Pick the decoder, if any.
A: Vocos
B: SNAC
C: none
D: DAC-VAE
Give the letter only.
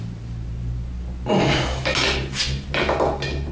C